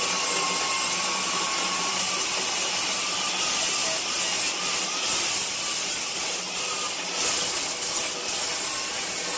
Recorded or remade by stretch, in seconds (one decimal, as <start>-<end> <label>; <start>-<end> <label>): 0.0-9.4 recorded

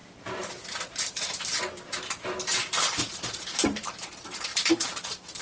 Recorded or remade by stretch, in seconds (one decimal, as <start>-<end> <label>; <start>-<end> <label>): 0.0-4.5 remade; 4.5-5.4 recorded

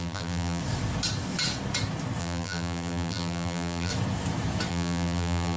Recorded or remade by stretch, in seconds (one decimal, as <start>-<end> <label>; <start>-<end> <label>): 0.0-0.6 remade; 0.6-2.2 recorded; 2.2-3.9 remade; 3.9-4.7 recorded; 4.7-5.6 remade